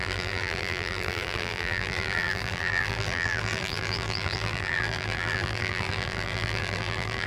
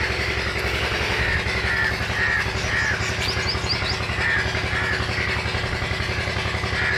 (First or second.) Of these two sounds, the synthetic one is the first